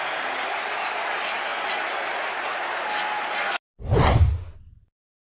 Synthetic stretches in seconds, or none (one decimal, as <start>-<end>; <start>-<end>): none